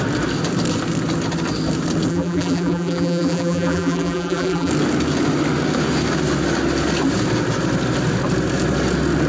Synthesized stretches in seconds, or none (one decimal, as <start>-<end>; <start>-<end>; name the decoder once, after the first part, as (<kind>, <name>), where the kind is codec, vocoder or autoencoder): 2.1-4.7 (vocoder, BigVGAN v2)

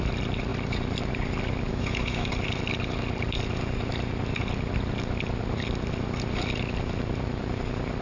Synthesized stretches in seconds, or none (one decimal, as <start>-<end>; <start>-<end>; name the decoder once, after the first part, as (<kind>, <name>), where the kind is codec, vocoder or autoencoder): 1.7-2.3 (autoencoder, DAC-VAE)

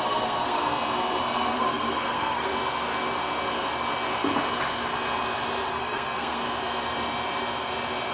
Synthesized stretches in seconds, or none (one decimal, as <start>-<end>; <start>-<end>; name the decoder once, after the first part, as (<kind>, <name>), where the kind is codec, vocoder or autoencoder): 0.0-0.6 (codec, SNAC); 1.2-2.5; 5.7-6.4

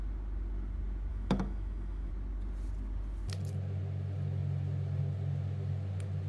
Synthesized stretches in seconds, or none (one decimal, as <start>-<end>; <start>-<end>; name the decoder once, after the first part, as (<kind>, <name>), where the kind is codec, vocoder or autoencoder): 1.1-2.1 (autoencoder, DAC-VAE)

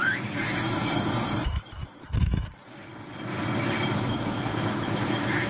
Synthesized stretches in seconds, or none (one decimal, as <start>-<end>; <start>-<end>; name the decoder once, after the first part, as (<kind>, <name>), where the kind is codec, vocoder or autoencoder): 0.0-2.9 (autoencoder, DAC-VAE); 4.0-5.5

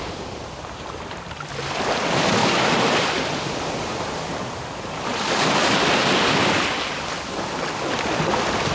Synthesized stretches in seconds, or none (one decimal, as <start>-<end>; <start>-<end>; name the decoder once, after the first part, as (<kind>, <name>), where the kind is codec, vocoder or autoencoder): 2.4-7.3 (vocoder, BigVGAN v2)

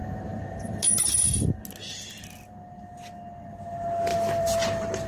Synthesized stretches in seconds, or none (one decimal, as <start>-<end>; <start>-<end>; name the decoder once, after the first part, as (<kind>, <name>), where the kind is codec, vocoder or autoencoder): 0.0-1.6 (vocoder, BigVGAN v2); 4.1-5.1

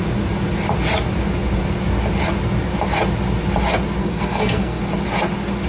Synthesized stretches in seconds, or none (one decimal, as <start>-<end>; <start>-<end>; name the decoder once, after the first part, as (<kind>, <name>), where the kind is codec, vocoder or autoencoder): 4.0-4.8 (codec, SNAC)